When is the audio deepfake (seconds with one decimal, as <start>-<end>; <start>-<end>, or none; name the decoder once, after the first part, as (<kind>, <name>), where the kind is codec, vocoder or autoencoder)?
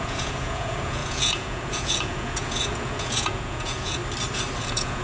0.0-4.0 (vocoder, Vocos); 4.6-5.0